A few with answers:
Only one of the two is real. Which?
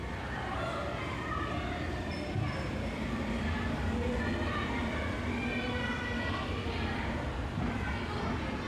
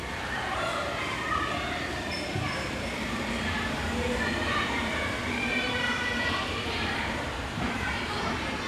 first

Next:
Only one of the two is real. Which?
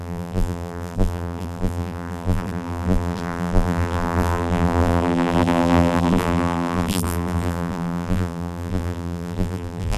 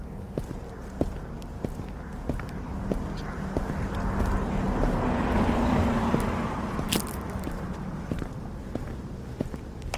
second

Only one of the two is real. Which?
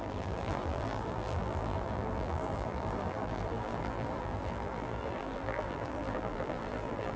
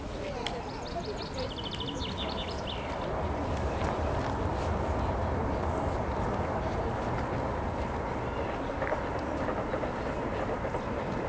second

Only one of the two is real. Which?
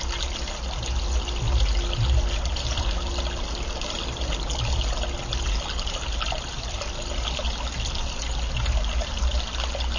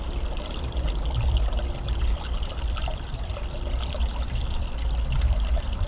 first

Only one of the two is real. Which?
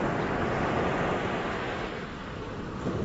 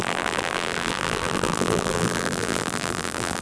first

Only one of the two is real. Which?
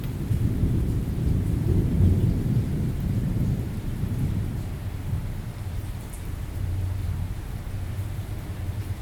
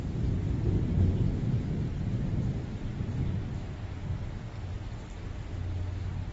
second